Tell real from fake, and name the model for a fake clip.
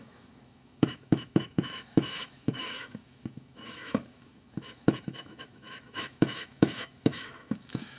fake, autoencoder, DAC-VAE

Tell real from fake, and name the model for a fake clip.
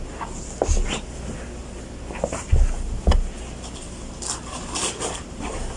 real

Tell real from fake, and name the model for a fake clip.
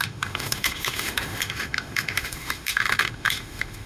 fake, autoencoder, DAC-VAE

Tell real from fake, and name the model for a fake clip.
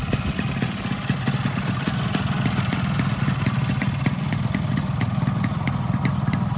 real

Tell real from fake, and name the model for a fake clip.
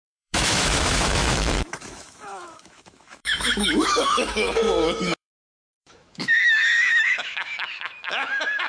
fake, autoencoder, DAC-VAE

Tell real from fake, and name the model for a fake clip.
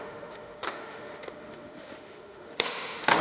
fake, autoencoder, DAC-VAE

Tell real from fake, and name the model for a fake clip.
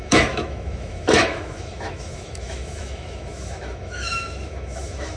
fake, autoencoder, DAC-VAE